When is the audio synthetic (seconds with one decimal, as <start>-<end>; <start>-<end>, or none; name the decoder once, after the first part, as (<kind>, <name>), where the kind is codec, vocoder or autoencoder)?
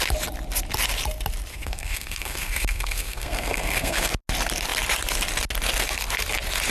1.5-4.1 (codec, SNAC)